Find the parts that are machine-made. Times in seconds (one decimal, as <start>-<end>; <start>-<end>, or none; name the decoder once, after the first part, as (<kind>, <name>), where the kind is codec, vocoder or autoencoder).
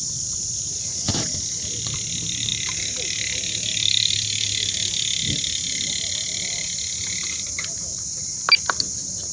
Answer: none